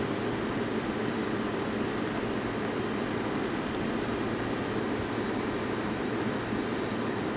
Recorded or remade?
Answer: recorded